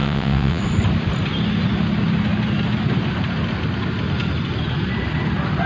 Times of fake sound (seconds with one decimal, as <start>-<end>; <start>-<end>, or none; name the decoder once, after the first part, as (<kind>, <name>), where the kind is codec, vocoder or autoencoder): 0.0-0.6 (vocoder, WaveNeXt)